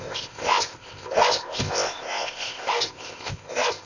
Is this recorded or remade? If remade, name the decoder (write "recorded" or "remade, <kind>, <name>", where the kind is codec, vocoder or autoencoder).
remade, codec, ZipCodec